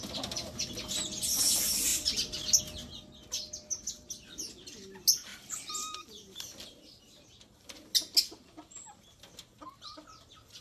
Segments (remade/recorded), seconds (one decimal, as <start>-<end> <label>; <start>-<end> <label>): 0.0-1.9 recorded; 1.9-2.6 remade; 2.6-5.3 recorded; 5.3-7.0 remade; 7.0-10.6 recorded